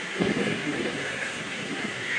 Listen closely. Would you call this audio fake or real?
fake